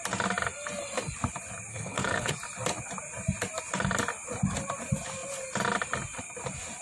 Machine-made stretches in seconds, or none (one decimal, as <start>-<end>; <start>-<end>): 1.7-2.3